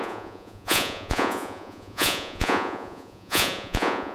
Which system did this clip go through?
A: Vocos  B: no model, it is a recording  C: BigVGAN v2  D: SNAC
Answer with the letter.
A